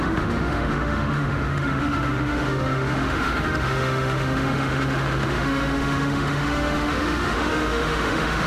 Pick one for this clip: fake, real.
fake